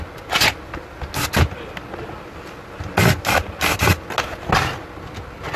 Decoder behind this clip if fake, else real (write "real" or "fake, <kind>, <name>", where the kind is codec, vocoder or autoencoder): real